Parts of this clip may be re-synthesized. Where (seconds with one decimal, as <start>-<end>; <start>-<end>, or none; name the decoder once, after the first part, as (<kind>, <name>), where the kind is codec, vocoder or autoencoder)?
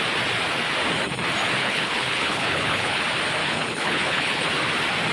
1.6-3.0 (codec, HILCodec); 3.4-4.5